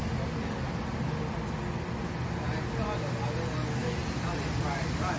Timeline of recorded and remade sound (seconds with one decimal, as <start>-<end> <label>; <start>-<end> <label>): 0.0-5.2 recorded